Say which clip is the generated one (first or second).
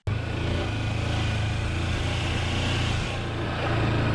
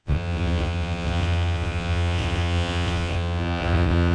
second